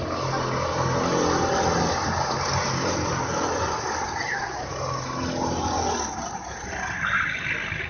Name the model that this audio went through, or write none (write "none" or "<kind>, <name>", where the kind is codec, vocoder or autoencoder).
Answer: none